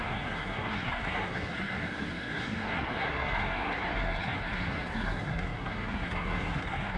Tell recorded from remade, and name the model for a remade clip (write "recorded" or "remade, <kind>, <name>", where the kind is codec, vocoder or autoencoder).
remade, codec, SNAC